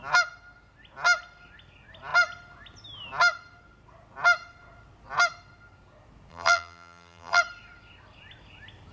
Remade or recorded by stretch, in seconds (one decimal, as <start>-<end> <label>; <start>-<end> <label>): 0.0-6.3 recorded; 6.3-7.4 remade; 7.4-8.9 recorded